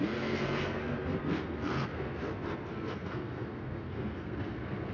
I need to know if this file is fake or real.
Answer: fake